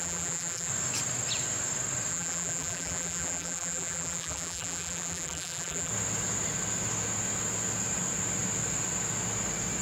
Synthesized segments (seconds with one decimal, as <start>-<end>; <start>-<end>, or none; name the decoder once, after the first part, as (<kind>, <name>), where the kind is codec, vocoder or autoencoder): 0.0-0.7 (vocoder, BigVGAN v2); 2.1-5.9